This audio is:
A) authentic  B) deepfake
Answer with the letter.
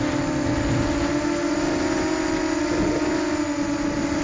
A